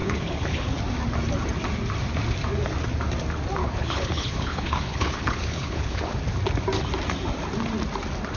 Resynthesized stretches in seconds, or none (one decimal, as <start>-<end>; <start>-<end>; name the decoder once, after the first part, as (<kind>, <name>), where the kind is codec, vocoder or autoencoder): 0.0-0.8 (codec, HILCodec); 3.6-6.2